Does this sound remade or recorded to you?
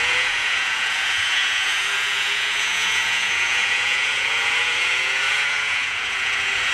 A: remade